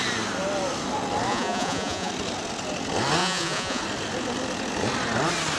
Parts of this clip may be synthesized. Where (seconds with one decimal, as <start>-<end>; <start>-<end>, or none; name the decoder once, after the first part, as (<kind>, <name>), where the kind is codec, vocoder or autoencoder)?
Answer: 1.3-2.1 (vocoder, Vocos); 3.2-3.8